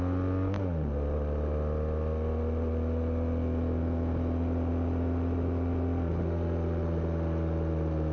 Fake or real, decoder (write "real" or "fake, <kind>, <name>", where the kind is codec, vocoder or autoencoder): real